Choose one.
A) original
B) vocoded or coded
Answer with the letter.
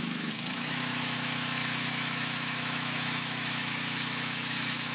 B